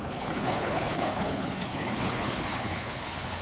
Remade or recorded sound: remade